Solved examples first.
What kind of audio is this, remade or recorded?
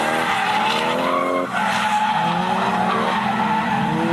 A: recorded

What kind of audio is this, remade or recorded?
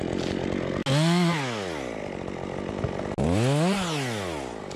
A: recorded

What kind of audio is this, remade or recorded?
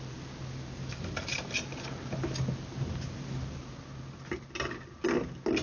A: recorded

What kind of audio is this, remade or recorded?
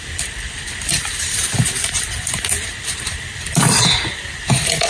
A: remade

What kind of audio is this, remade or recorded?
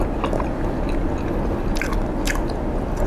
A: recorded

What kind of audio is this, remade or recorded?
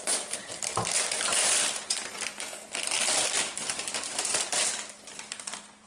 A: remade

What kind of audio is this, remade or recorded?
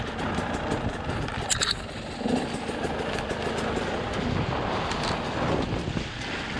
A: recorded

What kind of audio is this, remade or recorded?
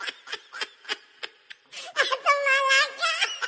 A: recorded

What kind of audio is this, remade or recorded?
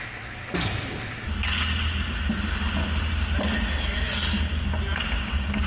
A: recorded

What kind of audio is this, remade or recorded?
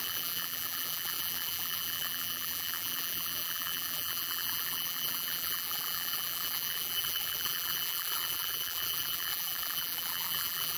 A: remade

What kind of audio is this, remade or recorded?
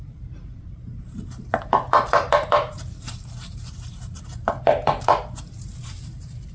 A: remade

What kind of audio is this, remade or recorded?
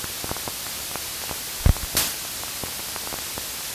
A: recorded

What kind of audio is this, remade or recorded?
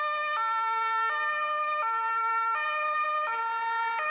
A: recorded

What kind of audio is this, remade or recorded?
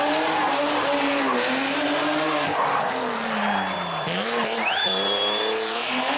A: remade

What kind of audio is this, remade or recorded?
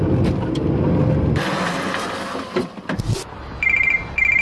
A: recorded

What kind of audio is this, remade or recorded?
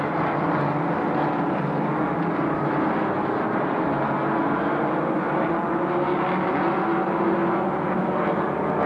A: recorded